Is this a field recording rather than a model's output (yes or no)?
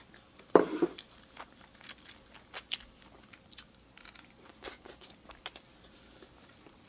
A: yes